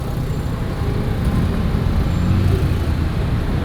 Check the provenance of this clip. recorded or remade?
recorded